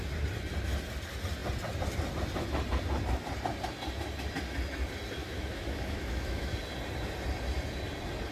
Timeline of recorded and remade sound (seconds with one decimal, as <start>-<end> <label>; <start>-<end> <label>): 0.0-5.2 recorded; 5.2-6.5 remade; 6.5-8.3 recorded